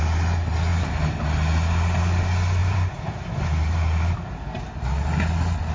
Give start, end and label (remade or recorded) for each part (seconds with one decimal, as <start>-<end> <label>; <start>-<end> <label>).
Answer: 0.0-2.6 recorded; 2.6-4.3 remade; 4.3-5.7 recorded